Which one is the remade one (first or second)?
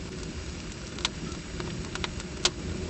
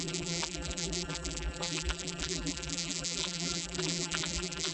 second